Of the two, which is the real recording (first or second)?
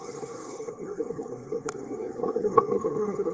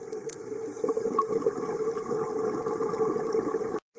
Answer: second